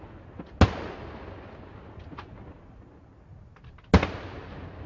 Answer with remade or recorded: recorded